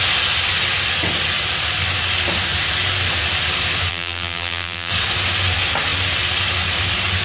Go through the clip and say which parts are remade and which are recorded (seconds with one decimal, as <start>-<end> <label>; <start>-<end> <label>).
0.0-3.9 recorded; 3.9-4.9 remade; 4.9-7.2 recorded